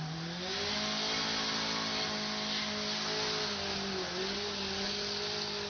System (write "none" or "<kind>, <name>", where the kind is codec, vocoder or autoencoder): none